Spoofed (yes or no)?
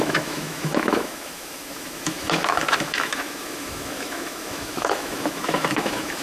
yes